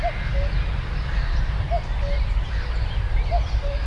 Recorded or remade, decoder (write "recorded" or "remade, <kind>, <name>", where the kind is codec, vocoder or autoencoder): remade, vocoder, BigVGAN v2